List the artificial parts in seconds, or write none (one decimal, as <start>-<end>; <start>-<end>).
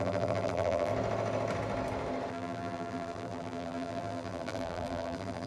0.0-0.9; 2.3-5.5